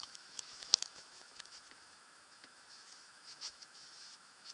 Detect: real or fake fake